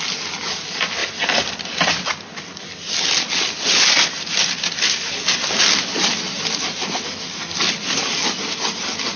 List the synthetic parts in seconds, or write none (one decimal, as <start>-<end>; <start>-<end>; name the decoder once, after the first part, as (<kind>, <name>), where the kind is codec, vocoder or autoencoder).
none